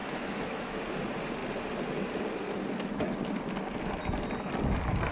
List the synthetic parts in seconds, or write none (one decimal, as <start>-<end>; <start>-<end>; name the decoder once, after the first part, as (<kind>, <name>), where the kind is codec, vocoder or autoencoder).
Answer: 0.0-0.8 (autoencoder, DAC-VAE)